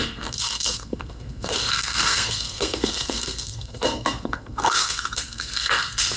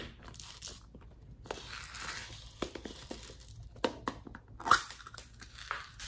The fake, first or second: first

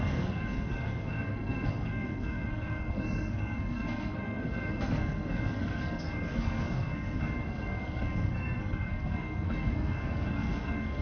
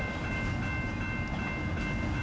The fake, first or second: first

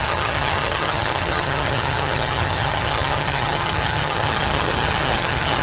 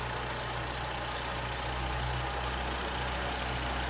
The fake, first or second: first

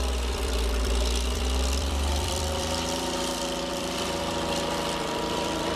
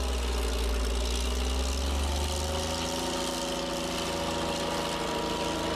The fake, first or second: first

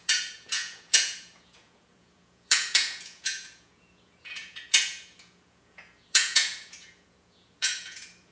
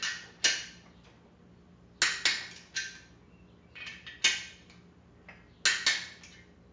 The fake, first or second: first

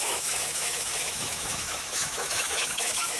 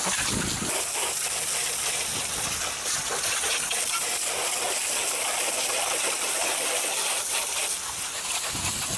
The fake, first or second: first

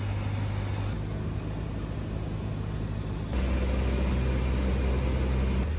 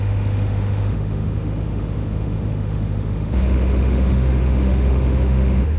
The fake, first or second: second